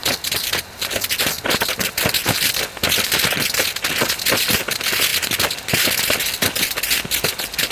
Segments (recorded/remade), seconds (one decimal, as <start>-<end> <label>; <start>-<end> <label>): 0.0-7.7 recorded